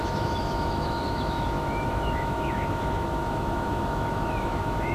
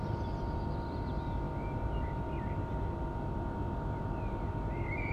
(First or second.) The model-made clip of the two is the first